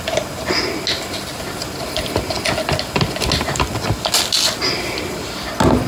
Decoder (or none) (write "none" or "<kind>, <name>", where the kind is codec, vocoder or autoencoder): none